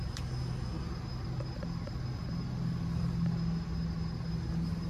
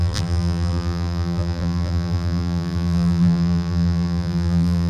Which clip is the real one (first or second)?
first